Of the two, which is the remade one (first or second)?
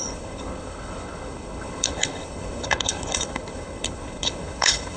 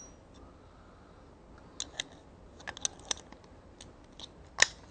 first